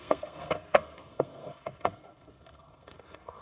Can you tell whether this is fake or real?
fake